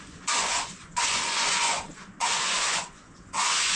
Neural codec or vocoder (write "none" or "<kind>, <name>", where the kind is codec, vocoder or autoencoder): vocoder, Vocos